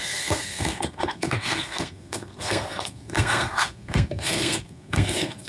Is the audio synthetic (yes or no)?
yes